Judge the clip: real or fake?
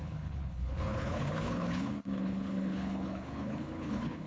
fake